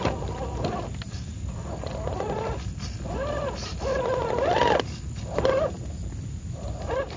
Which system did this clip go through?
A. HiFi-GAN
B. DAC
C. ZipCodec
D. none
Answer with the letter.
D